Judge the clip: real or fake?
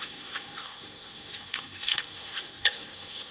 fake